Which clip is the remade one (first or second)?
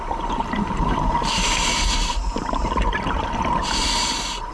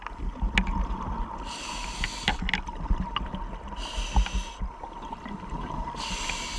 first